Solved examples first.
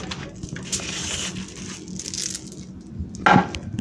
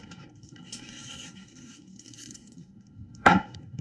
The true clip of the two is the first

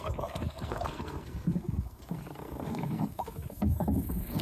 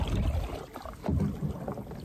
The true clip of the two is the second